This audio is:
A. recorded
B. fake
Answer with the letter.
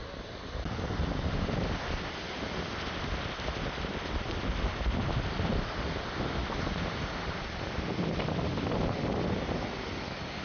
A